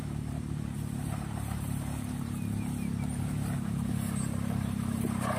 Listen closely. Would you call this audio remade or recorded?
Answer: remade